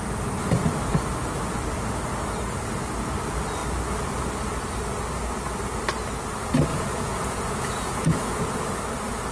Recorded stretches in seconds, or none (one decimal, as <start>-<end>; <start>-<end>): 0.0-6.7; 8.8-9.3